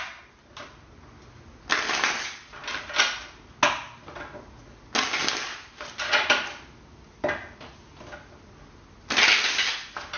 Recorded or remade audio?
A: recorded